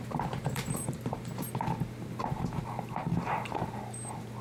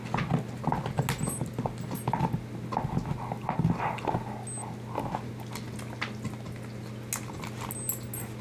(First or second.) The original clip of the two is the second